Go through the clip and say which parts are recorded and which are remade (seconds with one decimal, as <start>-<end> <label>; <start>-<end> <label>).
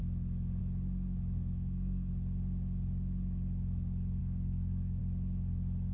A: 0.0-1.5 recorded; 1.5-2.1 remade; 2.1-4.2 recorded; 4.2-5.0 remade; 5.0-5.9 recorded